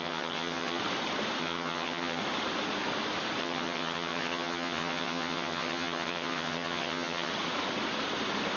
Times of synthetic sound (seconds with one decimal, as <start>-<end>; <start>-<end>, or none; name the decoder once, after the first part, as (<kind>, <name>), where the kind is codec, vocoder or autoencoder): 0.0-0.8 (vocoder, HiFi-GAN); 1.4-2.2; 3.4-7.3